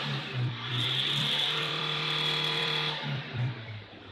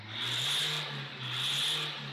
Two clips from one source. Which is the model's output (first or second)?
first